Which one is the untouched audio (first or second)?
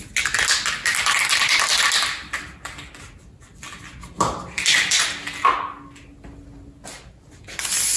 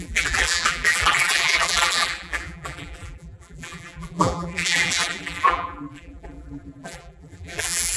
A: first